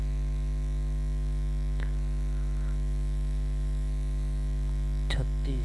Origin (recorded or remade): remade